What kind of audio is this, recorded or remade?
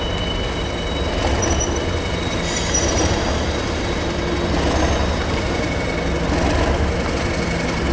recorded